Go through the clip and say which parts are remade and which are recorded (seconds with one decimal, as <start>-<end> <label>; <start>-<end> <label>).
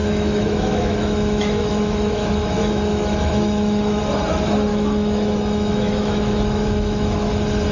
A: 0.0-4.0 remade; 4.0-4.7 recorded; 4.7-7.3 remade; 7.3-7.7 recorded